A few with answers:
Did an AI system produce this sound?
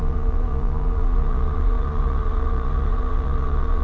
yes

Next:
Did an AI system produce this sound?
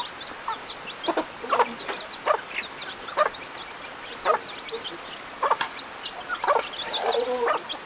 no